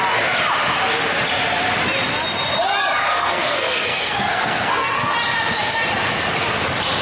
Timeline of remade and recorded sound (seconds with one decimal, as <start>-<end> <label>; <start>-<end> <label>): 0.0-3.1 recorded; 3.1-5.1 remade; 5.1-7.0 recorded

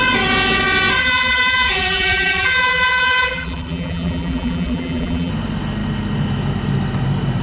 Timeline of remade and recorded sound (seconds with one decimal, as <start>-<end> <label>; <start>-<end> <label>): 0.0-1.0 recorded; 1.0-5.3 remade; 5.3-7.4 recorded